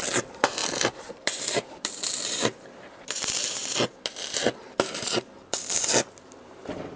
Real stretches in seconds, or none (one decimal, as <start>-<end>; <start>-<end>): 0.6-1.1; 3.6-6.1